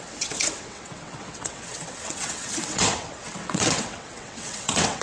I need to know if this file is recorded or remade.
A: remade